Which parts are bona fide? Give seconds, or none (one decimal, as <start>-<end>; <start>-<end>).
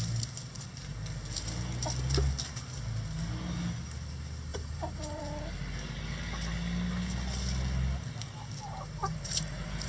0.0-4.5; 5.2-9.0